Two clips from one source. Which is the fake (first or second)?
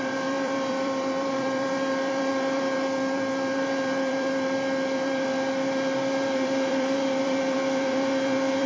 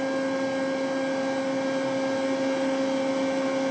first